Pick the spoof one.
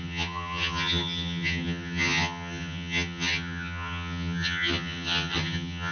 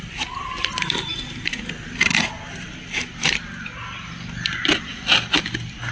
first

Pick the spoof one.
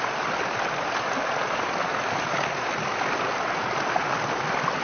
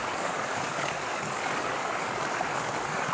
second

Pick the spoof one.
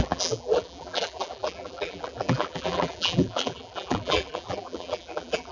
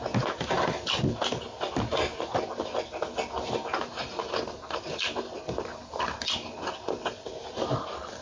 first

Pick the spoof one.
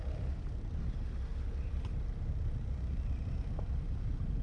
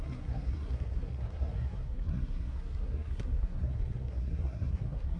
second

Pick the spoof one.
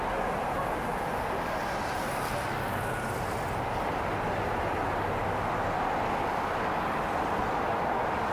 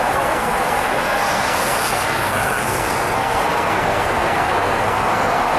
second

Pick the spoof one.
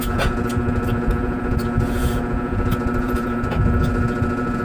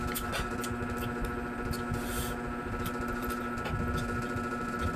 first